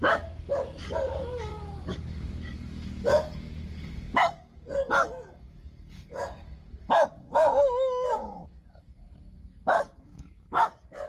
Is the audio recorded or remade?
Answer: remade